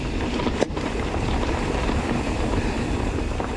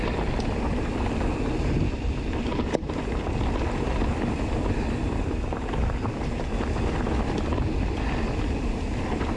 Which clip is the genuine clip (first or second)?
second